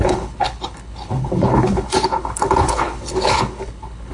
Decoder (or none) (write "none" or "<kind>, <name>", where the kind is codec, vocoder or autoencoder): codec, HILCodec